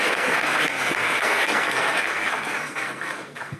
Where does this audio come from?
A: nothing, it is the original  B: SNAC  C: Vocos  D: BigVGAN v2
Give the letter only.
B